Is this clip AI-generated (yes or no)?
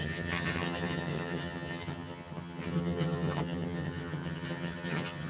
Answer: yes